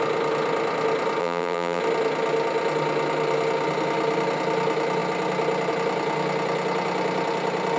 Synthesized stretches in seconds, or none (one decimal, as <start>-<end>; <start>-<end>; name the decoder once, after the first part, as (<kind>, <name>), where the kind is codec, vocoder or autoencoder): 1.2-1.8 (vocoder, BigVGAN v2)